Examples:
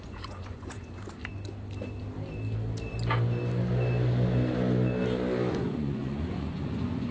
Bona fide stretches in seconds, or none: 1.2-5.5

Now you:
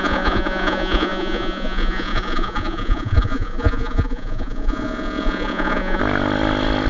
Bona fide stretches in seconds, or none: 6.0-6.9

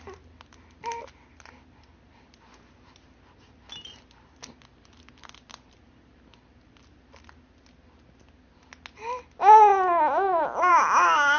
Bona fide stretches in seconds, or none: 0.0-11.4

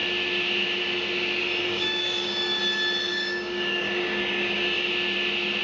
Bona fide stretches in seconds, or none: 0.0-1.6; 2.6-3.1; 4.9-5.6

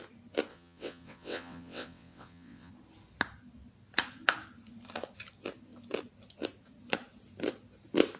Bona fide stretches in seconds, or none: 0.0-0.5; 2.7-8.2

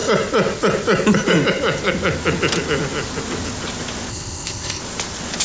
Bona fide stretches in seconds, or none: 0.0-4.1; 4.8-5.4

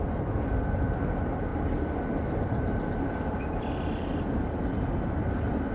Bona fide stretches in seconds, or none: 0.0-5.7

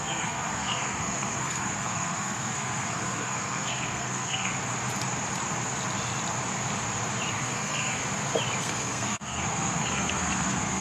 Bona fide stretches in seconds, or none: 4.5-7.3; 8.0-8.6